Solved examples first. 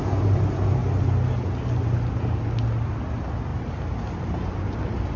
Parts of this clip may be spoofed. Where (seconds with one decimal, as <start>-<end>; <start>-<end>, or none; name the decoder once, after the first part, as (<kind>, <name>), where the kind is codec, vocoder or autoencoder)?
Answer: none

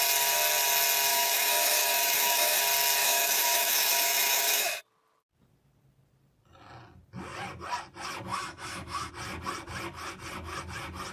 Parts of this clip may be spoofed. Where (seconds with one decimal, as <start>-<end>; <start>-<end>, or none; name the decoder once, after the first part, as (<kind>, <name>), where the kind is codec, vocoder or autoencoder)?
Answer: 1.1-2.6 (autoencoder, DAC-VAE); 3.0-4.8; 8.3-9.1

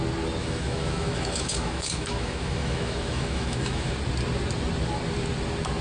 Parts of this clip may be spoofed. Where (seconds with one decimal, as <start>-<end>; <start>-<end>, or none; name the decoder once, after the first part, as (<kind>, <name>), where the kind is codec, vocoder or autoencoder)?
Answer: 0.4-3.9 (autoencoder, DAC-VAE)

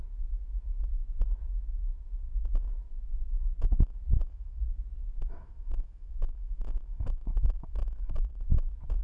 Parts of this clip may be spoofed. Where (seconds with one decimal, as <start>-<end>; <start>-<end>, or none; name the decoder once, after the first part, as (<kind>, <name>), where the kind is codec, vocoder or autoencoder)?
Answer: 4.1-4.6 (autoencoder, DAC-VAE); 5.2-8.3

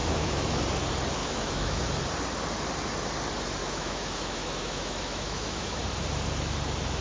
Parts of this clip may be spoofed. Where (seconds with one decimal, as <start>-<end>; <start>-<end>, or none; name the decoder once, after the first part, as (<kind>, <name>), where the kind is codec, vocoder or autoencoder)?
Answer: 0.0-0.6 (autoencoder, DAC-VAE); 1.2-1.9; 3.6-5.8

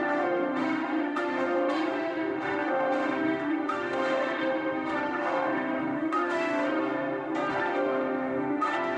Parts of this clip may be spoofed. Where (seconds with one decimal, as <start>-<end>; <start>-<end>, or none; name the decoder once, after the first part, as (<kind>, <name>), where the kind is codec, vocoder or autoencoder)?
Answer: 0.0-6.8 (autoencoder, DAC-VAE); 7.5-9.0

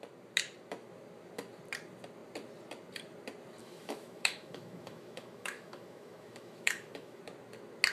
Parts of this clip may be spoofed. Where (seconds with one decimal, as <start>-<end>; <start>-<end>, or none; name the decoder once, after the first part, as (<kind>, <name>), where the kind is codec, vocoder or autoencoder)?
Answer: 3.6-7.2 (autoencoder, DAC-VAE)